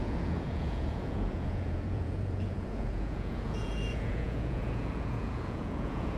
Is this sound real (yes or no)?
no